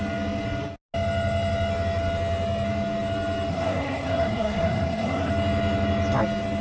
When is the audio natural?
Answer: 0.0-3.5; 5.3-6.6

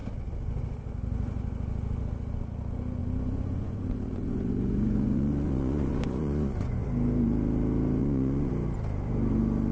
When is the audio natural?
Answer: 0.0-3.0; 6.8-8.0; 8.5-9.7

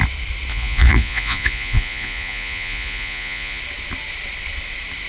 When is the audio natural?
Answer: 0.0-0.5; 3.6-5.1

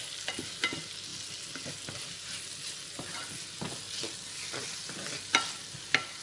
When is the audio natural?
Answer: 0.0-6.2

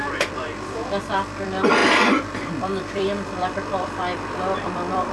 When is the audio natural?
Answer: none

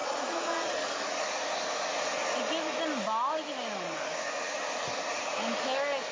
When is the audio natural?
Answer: 0.7-6.1